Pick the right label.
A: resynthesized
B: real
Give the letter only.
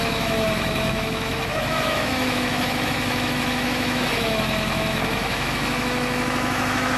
A